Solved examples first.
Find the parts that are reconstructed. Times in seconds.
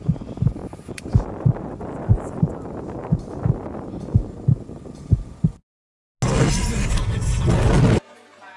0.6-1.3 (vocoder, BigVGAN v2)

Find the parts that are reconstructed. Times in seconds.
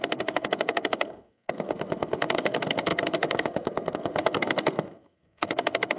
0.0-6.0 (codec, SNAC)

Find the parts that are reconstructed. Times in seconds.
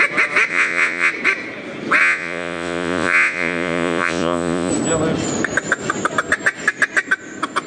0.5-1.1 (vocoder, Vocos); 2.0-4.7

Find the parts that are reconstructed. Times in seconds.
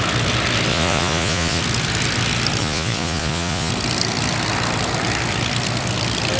0.7-1.6 (vocoder, Vocos); 2.6-3.7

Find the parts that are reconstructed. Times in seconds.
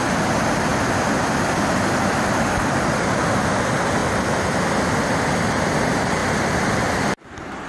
0.0-0.7 (vocoder, BigVGAN v2); 2.6-4.0; 5.2-7.7